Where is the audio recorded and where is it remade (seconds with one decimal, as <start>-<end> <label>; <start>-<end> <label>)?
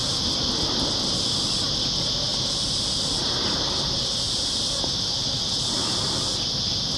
0.0-2.3 recorded; 2.3-6.5 remade; 6.5-7.0 recorded